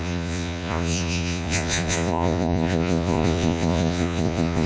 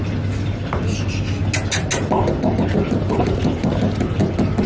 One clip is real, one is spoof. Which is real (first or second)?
second